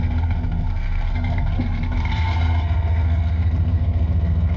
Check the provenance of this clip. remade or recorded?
remade